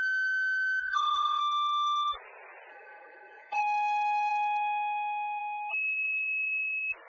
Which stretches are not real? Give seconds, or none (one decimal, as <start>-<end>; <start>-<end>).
0.8-1.4; 2.7-3.6